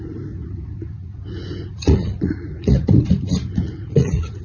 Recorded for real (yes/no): no